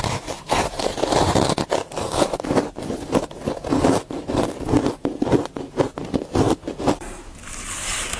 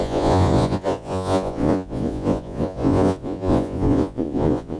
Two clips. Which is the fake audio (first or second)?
second